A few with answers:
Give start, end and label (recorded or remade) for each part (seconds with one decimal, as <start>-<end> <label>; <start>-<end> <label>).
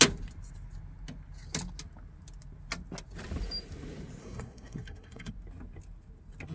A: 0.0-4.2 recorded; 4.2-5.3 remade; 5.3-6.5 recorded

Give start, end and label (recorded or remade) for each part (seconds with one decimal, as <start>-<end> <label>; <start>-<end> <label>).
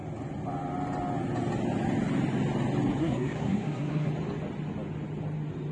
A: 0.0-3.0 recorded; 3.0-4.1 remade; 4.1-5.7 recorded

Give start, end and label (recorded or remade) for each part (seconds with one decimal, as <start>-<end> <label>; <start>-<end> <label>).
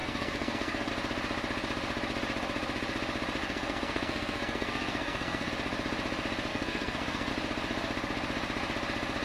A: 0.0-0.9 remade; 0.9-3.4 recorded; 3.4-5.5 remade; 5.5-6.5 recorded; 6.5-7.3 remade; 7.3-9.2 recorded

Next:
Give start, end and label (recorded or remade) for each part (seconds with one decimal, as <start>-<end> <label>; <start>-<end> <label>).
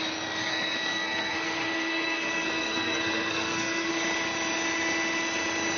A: 0.0-0.4 recorded; 0.4-3.9 remade; 3.9-5.8 recorded